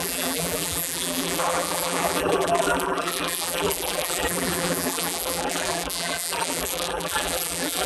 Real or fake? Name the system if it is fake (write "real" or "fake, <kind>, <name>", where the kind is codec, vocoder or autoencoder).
fake, vocoder, BigVGAN v2